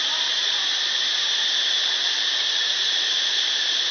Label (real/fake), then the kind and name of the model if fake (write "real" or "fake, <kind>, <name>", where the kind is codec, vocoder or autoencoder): fake, vocoder, BigVGAN v2